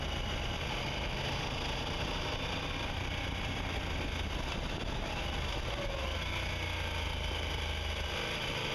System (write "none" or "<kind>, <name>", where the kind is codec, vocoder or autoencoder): none